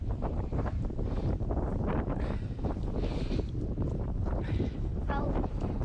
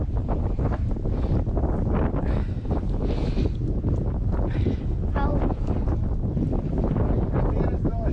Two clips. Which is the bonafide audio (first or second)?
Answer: second